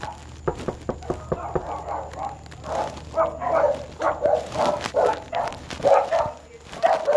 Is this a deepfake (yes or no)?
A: no